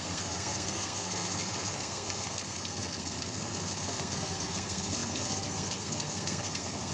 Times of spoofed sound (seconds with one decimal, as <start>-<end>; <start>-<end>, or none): 0.0-6.9